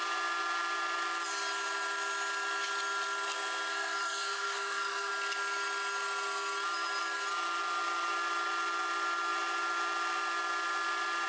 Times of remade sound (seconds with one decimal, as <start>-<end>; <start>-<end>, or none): 3.7-5.1